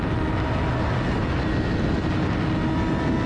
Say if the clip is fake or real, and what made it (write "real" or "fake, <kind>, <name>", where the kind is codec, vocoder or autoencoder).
real